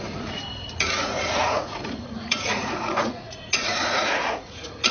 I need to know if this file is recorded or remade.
remade